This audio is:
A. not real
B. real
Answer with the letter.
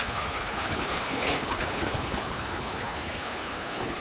A